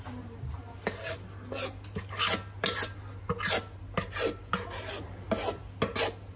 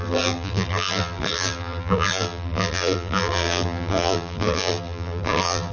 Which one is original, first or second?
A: first